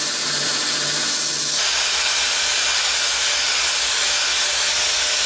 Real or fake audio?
real